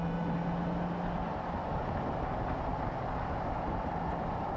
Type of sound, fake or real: real